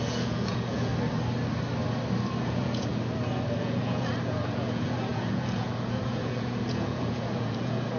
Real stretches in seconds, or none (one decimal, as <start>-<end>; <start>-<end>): 0.9-2.4; 2.9-3.6